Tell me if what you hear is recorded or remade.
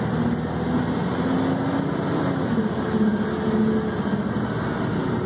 recorded